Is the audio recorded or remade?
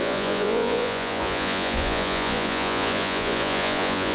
remade